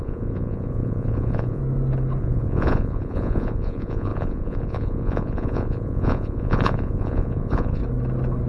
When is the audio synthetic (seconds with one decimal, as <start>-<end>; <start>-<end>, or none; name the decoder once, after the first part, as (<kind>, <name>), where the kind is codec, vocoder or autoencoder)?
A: 0.0-1.6 (vocoder, Vocos); 2.2-7.8